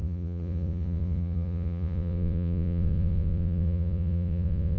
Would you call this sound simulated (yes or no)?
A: yes